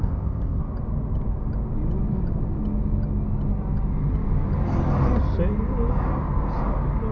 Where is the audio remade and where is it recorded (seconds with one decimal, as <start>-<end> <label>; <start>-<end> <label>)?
0.0-0.6 remade; 0.6-7.1 recorded